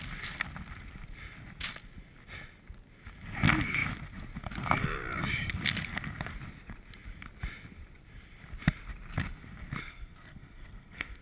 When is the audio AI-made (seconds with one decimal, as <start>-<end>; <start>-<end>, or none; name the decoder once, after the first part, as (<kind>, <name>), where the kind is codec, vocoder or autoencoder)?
9.8-11.2 (codec, SNAC)